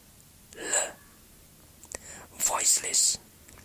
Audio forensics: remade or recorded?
recorded